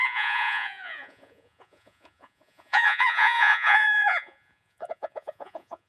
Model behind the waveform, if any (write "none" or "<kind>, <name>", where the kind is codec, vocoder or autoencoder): vocoder, Vocos